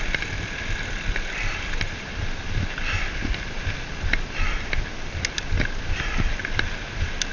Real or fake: real